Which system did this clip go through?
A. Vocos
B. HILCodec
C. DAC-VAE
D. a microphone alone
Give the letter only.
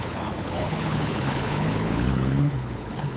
B